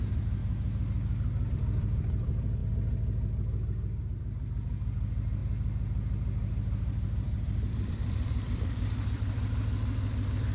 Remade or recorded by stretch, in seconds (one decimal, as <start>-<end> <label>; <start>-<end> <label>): 0.0-0.4 remade; 0.4-1.5 recorded; 1.5-2.6 remade; 2.6-4.0 recorded; 4.0-10.5 remade